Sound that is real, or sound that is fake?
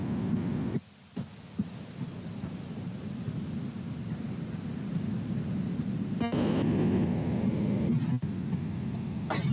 real